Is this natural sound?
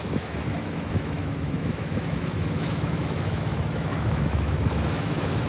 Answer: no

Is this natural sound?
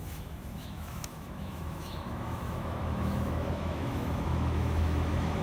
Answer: no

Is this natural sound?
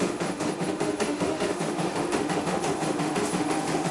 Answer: no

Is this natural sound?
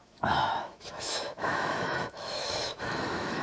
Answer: no